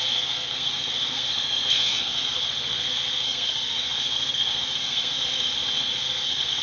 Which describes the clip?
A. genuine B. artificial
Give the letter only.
B